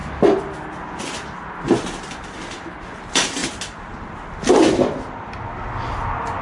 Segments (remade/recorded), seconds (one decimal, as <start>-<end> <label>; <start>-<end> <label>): 0.0-6.4 recorded